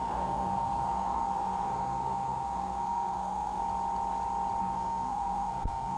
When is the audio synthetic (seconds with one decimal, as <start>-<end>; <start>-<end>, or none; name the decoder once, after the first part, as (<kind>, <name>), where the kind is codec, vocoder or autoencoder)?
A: 0.0-3.6 (codec, SNAC); 4.6-6.0